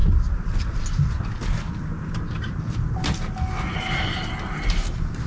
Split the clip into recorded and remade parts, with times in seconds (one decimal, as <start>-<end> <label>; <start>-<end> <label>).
0.0-5.3 recorded